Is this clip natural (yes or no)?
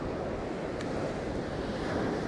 yes